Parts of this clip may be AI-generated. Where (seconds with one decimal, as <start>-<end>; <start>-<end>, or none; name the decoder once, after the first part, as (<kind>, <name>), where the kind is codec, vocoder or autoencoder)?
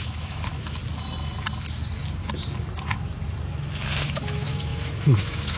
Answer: 0.0-0.8 (autoencoder, DAC-VAE); 3.5-5.6